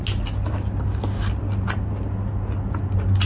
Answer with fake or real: real